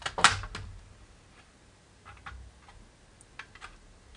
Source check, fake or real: real